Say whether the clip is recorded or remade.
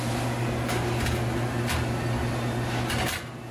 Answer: recorded